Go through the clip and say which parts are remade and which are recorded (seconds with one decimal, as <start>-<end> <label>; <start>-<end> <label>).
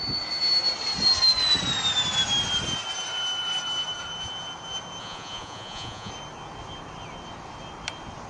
0.0-5.0 recorded; 5.0-6.1 remade; 6.1-8.3 recorded